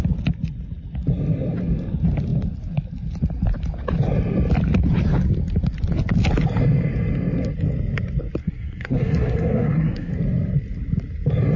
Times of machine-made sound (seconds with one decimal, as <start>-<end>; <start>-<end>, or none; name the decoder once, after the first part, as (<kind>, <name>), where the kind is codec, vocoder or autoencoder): 8.4-10.1 (codec, SNAC)